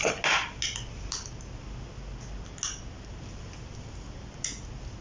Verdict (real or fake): real